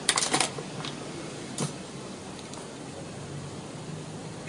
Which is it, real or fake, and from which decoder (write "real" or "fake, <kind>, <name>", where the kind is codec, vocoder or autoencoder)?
real